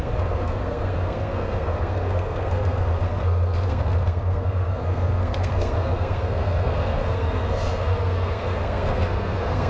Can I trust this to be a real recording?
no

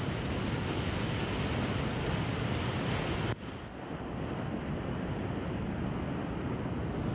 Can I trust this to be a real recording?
yes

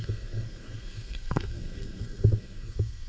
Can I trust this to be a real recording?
no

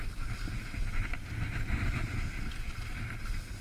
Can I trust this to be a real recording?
yes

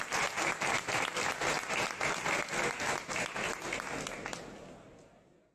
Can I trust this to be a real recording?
yes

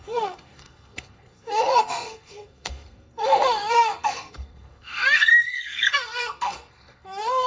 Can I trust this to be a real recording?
no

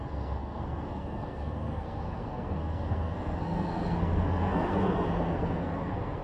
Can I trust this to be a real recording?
no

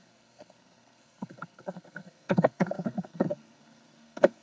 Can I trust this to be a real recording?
no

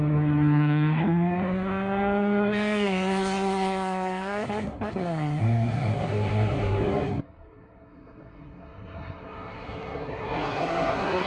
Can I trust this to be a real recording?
no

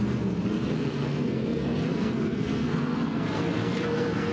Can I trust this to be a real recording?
no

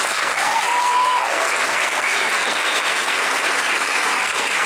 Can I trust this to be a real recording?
no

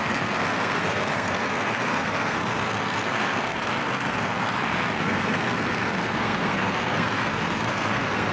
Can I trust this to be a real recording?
no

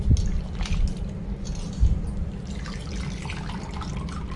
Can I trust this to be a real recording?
yes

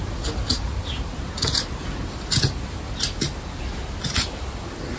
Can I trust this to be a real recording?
yes